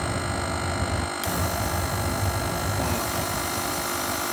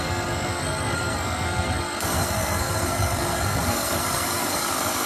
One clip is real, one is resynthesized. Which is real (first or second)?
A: first